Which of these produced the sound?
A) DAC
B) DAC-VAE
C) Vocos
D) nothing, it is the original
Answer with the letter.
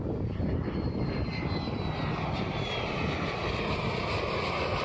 D